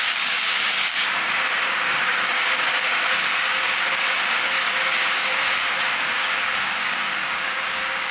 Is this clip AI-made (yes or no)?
yes